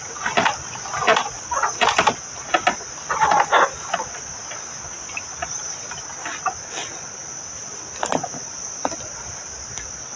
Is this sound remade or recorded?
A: recorded